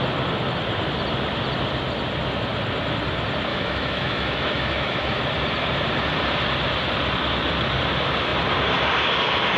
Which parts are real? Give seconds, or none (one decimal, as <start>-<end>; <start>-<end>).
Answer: 0.0-3.5; 5.2-9.6